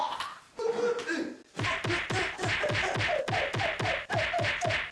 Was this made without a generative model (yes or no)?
yes